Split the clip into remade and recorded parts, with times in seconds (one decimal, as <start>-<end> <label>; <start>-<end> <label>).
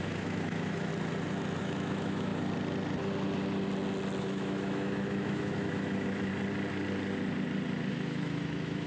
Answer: 0.0-0.9 remade; 0.9-1.6 recorded; 1.6-2.3 remade; 2.3-4.2 recorded; 4.2-6.3 remade; 6.3-7.9 recorded; 7.9-8.9 remade